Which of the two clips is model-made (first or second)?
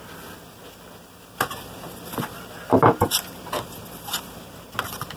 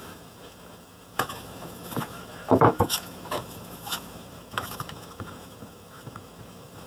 second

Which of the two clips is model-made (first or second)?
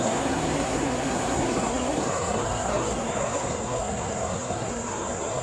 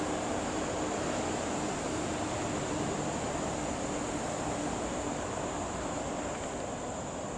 first